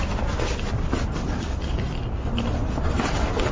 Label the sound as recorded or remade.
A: recorded